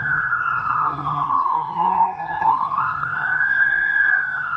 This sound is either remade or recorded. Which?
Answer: remade